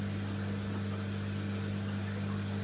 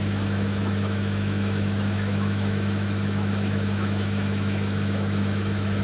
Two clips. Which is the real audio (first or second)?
first